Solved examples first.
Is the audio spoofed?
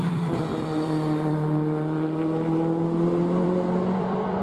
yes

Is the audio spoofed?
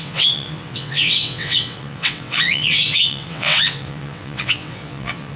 yes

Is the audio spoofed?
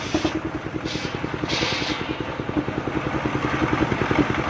no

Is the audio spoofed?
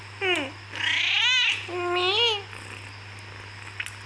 no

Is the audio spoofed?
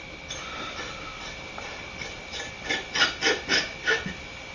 no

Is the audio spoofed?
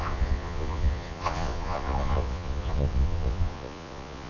yes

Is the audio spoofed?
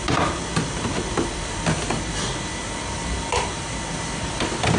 no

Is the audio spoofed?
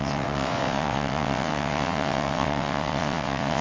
yes